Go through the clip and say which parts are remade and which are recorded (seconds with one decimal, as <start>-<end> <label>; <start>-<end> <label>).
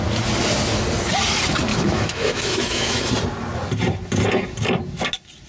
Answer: 0.0-1.7 recorded; 1.7-3.1 remade; 3.1-5.5 recorded